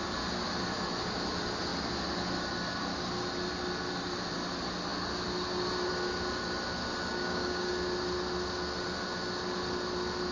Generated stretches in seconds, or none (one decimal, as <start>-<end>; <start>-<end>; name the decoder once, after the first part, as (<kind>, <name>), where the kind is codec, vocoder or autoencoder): 7.0-7.7 (codec, DAC)

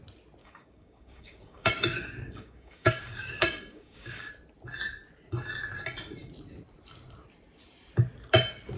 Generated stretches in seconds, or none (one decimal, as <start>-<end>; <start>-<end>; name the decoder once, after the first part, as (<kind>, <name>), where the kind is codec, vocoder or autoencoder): 0.4-4.3 (codec, DAC)